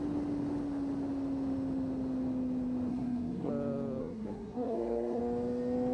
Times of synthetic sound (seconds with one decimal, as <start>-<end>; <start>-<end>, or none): 2.9-3.5; 4.0-5.2